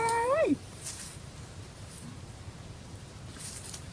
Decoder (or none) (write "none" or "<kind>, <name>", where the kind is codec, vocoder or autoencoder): vocoder, BigVGAN v2